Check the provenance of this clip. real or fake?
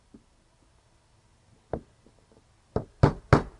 real